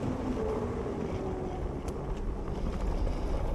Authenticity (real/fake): real